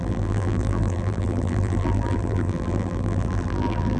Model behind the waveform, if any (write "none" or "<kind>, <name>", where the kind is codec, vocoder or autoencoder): vocoder, BigVGAN v2